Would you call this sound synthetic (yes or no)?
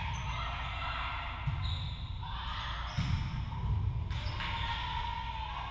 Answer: no